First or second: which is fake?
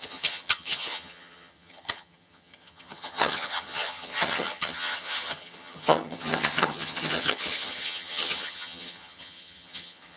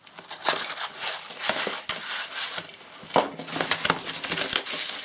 first